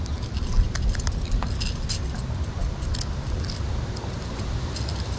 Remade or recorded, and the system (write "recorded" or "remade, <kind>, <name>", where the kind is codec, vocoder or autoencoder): recorded